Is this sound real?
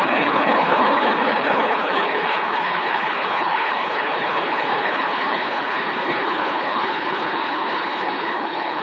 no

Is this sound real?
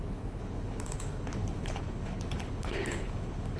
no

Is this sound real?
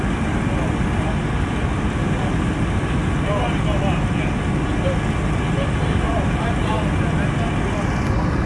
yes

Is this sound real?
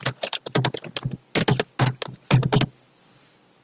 yes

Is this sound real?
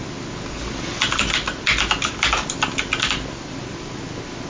yes